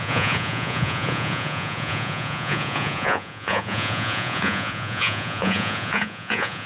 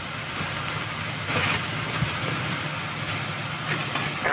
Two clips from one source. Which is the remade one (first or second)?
first